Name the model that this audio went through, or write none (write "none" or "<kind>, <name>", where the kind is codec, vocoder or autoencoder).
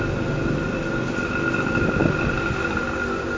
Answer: none